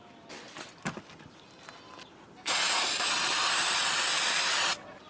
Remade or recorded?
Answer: recorded